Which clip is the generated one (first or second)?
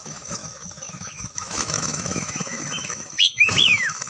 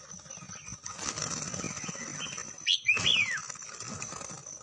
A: first